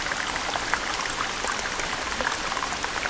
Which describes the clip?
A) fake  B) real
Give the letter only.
B